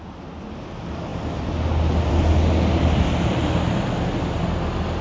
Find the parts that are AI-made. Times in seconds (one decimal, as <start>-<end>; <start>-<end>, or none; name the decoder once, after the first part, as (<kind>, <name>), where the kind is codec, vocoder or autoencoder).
none